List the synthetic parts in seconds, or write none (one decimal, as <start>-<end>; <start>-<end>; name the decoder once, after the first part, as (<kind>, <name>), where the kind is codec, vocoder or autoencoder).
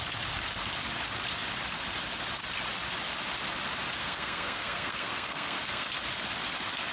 4.0-5.9 (codec, SNAC)